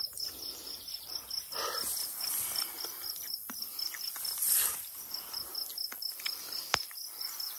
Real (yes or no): yes